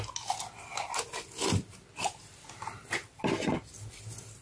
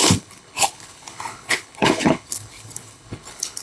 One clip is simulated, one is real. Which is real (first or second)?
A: first